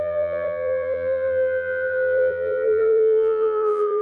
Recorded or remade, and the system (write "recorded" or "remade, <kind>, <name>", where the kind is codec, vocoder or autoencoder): remade, vocoder, BigVGAN v2